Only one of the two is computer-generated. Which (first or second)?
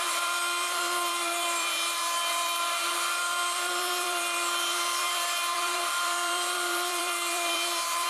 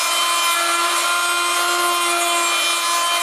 first